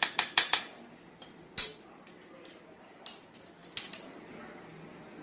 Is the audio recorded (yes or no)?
yes